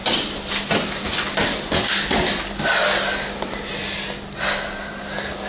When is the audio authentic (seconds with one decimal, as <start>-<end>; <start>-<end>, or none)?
0.0-5.5